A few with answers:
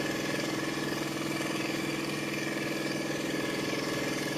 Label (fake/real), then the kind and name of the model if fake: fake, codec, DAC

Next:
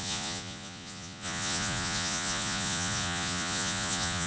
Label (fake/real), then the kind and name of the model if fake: fake, vocoder, Vocos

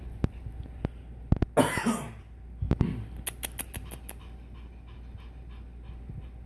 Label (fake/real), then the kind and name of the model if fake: real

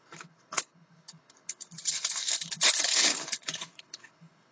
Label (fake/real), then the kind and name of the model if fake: fake, codec, HILCodec